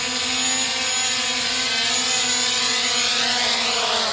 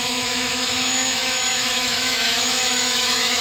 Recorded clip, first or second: first